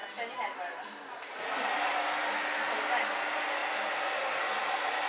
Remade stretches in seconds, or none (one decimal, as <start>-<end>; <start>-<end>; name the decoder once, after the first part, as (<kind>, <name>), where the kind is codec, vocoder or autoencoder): none